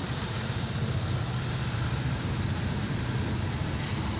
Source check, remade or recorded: remade